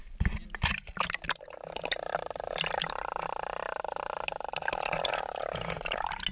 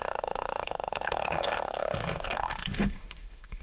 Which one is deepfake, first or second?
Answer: second